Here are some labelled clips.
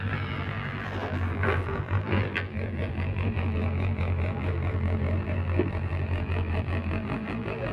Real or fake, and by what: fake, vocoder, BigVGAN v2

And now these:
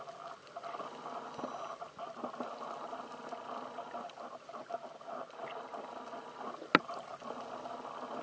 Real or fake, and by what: real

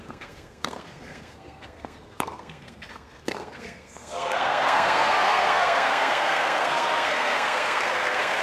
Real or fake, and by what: fake, codec, SNAC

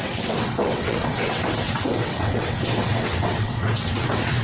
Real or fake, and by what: fake, vocoder, WaveNeXt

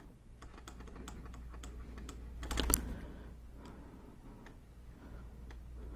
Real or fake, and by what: real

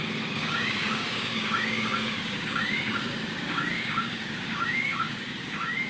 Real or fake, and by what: fake, codec, DAC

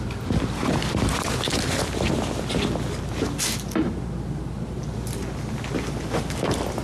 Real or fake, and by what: real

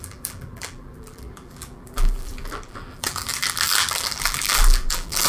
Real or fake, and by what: fake, vocoder, BigVGAN v2